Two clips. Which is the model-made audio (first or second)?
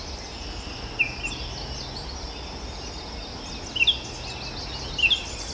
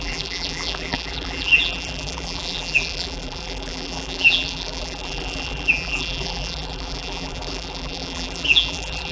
second